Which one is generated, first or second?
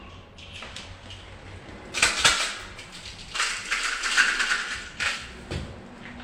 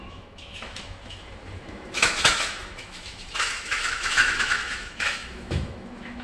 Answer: second